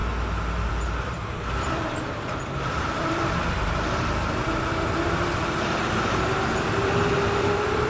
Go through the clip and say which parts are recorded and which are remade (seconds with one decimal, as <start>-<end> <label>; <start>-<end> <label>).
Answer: 0.0-0.7 recorded; 0.7-7.9 remade